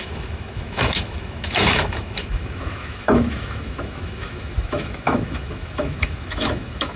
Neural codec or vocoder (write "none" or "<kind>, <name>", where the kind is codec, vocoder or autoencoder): autoencoder, DAC-VAE